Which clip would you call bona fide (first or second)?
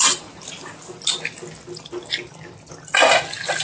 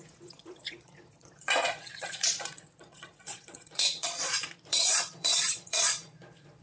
first